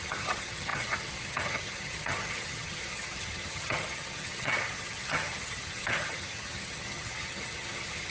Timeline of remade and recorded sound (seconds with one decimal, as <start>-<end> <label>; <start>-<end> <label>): 0.0-8.1 remade